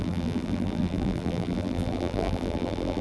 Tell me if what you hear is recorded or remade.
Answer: remade